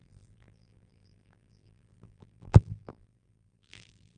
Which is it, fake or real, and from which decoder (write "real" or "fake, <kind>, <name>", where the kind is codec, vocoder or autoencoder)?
fake, vocoder, BigVGAN v2